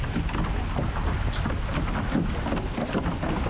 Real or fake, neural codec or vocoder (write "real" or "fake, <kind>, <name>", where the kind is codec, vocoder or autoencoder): real